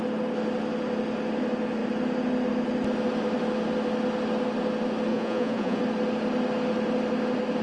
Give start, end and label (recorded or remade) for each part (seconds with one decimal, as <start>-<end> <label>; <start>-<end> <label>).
0.0-5.1 recorded; 5.1-5.8 remade; 5.8-7.6 recorded